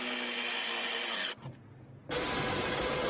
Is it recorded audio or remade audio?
recorded